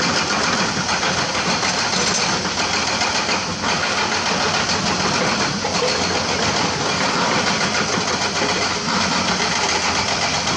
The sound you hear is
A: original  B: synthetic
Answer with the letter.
A